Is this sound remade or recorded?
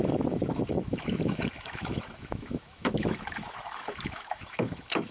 remade